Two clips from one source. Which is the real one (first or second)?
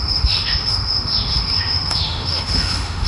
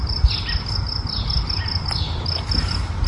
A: second